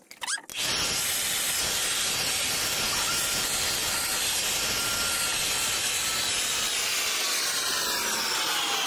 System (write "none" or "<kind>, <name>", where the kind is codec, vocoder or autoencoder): none